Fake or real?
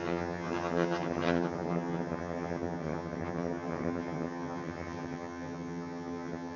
fake